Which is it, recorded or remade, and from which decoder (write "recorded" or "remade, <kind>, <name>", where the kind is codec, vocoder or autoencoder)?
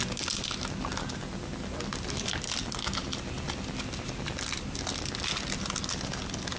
recorded